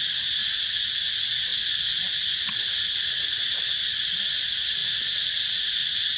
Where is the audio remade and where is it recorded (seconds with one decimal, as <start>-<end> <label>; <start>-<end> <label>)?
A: 0.0-4.8 remade; 4.8-5.7 recorded; 5.7-6.2 remade